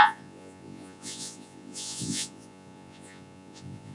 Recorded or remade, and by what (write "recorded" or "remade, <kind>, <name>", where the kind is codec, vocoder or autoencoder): remade, vocoder, Vocos